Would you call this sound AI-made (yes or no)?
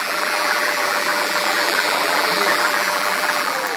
yes